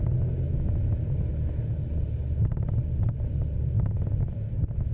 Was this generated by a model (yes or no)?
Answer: no